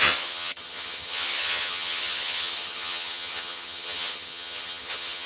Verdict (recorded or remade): remade